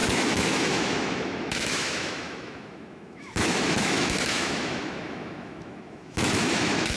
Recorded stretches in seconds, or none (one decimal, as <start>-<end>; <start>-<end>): none